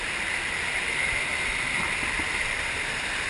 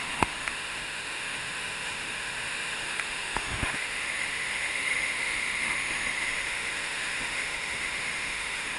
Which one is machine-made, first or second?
second